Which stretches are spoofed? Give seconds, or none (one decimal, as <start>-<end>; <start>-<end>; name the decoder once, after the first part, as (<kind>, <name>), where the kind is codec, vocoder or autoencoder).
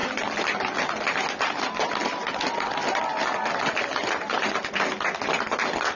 none